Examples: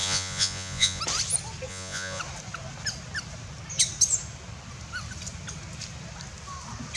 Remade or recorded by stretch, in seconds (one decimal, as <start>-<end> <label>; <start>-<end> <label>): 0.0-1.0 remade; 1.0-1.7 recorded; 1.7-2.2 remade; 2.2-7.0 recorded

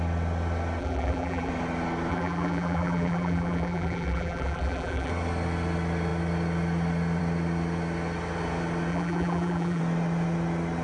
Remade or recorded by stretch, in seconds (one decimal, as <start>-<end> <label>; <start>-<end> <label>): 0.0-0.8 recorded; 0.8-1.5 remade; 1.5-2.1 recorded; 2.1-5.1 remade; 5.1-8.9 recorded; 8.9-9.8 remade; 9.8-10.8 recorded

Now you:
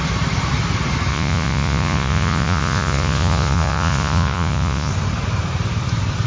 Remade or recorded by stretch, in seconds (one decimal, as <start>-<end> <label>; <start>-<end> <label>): 0.0-1.1 recorded; 1.1-4.9 remade; 4.9-6.3 recorded

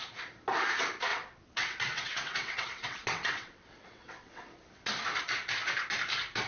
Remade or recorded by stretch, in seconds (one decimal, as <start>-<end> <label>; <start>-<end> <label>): 0.0-1.1 recorded; 1.1-4.6 remade; 4.6-6.5 recorded